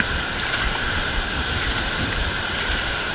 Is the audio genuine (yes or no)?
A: no